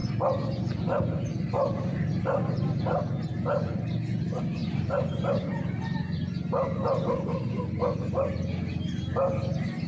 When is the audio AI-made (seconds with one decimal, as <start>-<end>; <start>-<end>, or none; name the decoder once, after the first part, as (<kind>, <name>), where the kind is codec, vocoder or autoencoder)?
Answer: 0.0-3.2 (vocoder, BigVGAN v2); 4.6-5.3